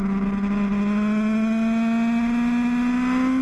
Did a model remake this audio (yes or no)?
no